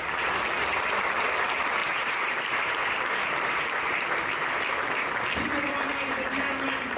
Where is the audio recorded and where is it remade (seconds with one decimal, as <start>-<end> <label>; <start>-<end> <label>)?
0.0-1.8 recorded; 1.8-2.7 remade; 2.7-5.9 recorded; 5.9-6.4 remade; 6.4-7.0 recorded